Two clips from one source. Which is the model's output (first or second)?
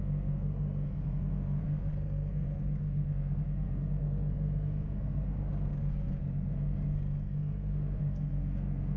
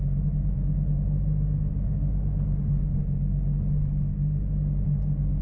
first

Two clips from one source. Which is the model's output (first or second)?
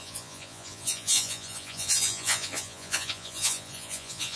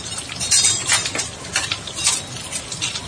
first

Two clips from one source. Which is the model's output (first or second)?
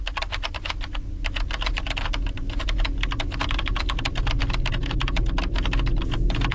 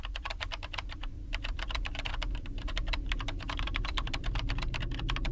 second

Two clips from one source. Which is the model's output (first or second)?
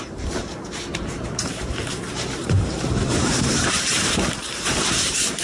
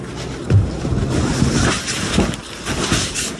first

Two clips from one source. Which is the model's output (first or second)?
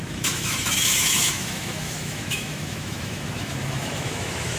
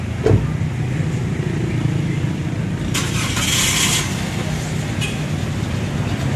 first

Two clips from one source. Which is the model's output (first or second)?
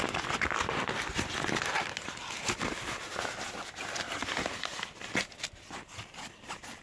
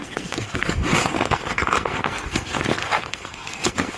second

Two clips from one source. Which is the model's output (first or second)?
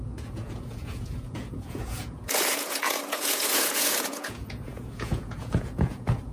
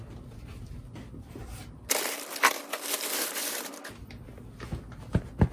first